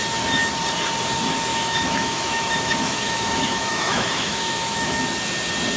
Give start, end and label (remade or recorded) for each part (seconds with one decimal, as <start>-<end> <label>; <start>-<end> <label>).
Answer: 0.0-1.5 recorded; 1.5-5.0 remade; 5.0-5.8 recorded